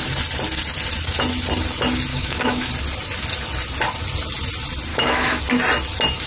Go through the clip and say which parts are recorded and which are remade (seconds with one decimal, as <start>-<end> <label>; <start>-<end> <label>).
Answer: 0.0-2.1 recorded; 2.1-2.7 remade; 2.7-4.9 recorded; 4.9-5.4 remade; 5.4-6.3 recorded